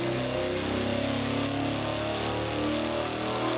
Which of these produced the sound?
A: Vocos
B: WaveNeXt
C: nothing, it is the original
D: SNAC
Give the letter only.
C